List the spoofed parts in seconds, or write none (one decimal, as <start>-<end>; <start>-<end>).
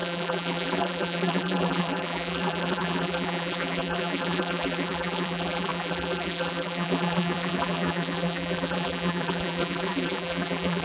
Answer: 0.0-10.8